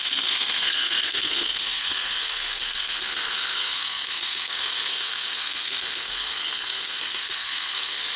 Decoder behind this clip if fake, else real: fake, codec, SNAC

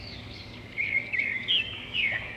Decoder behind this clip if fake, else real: fake, codec, DAC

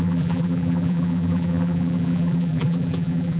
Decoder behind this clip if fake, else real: fake, vocoder, BigVGAN v2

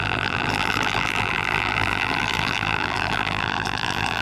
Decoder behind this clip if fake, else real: fake, vocoder, BigVGAN v2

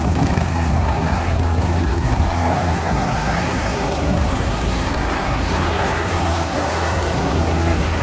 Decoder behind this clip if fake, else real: fake, codec, SNAC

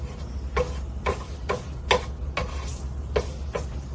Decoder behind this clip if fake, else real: real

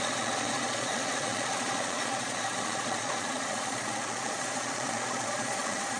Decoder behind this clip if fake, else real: fake, vocoder, Vocos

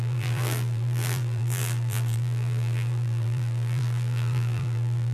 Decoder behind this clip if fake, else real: fake, vocoder, BigVGAN v2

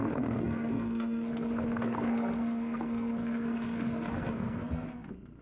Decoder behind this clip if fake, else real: fake, codec, SNAC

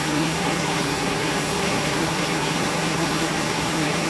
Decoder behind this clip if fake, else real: fake, codec, SNAC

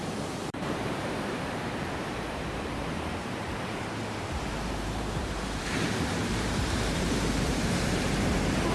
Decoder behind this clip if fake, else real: fake, vocoder, BigVGAN v2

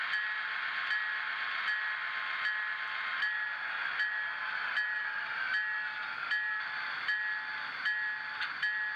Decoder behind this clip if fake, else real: real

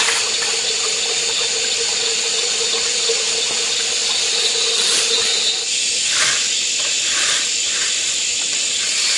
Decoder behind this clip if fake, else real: real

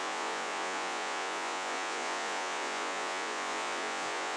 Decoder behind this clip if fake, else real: fake, vocoder, Vocos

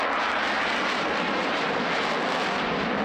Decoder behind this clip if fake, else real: real